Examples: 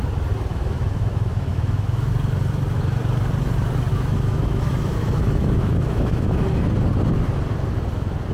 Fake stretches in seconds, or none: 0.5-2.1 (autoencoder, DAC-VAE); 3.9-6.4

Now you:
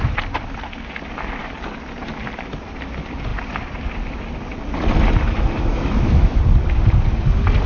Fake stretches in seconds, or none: 5.7-6.4 (autoencoder, DAC-VAE)

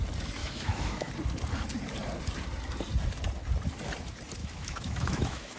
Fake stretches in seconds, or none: 0.4-1.1 (autoencoder, DAC-VAE); 4.4-5.6

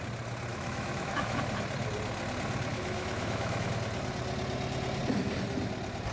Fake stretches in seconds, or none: 0.5-1.4 (autoencoder, DAC-VAE); 2.7-3.7

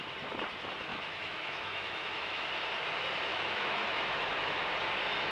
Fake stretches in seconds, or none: 0.9-2.4 (autoencoder, DAC-VAE); 3.3-4.6

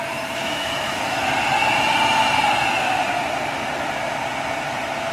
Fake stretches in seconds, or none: 0.4-1.2 (autoencoder, DAC-VAE)

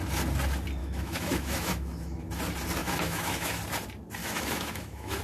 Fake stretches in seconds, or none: 0.8-2.2 (autoencoder, DAC-VAE); 2.8-3.6; 4.2-5.2